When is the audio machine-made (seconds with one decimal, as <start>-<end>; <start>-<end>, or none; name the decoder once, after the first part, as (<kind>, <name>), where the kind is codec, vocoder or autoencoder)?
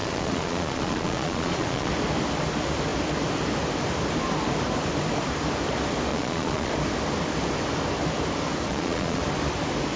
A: 0.0-1.9 (vocoder, Vocos); 6.1-6.7; 8.7-9.2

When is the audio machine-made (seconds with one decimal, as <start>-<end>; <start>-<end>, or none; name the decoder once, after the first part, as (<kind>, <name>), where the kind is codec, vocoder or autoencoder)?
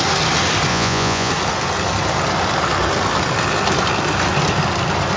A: 0.7-1.3 (vocoder, Vocos)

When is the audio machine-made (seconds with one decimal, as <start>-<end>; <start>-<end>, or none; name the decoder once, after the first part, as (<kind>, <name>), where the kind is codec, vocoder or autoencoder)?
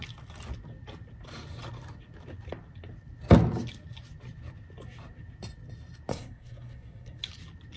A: 6.1-7.2 (codec, SNAC)